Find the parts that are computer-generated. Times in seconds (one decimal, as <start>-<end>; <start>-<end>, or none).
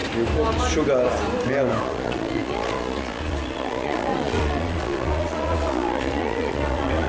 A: 1.8-7.1